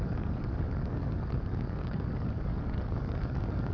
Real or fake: fake